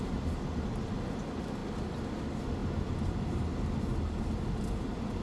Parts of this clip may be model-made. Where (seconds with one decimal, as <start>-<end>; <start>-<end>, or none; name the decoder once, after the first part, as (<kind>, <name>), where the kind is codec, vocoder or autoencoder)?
none